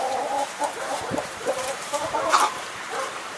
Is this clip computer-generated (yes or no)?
yes